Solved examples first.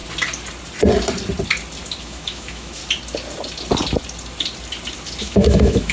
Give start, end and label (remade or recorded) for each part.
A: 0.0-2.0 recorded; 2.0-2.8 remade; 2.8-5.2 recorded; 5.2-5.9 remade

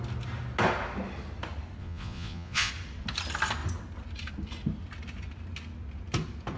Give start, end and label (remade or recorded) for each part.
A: 0.0-1.8 recorded; 1.8-2.7 remade; 2.7-6.6 recorded

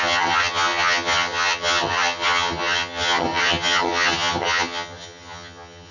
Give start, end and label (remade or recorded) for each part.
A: 0.0-5.9 remade

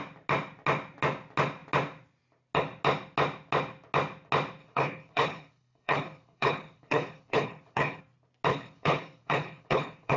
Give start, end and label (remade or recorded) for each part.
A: 0.0-4.6 recorded; 4.6-8.0 remade; 8.0-8.5 recorded; 8.5-10.2 remade

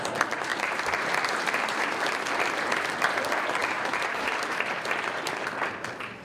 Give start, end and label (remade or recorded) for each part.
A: 0.0-0.5 recorded; 0.5-1.9 remade; 1.9-3.6 recorded; 3.6-4.7 remade; 4.7-6.2 recorded

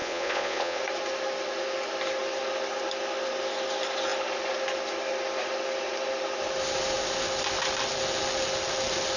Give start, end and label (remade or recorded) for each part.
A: 0.0-0.8 remade; 0.8-9.2 recorded

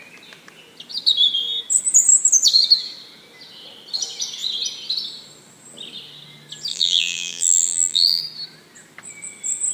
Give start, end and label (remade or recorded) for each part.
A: 0.0-6.7 recorded; 6.7-8.2 remade; 8.2-9.7 recorded

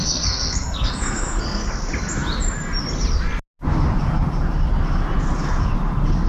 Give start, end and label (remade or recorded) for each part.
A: 0.0-1.7 remade; 1.7-6.3 recorded